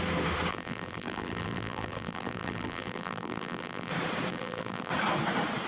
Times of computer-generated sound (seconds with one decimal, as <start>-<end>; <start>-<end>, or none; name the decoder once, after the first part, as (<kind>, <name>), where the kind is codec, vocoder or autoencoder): 0.5-3.9 (vocoder, BigVGAN v2); 4.3-4.9